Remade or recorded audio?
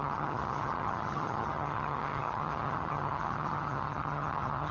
remade